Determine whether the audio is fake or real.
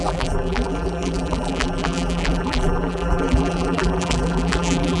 fake